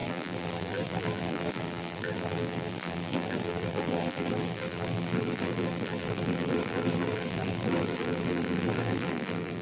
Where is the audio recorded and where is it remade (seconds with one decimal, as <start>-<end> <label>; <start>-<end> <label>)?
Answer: 0.0-9.6 remade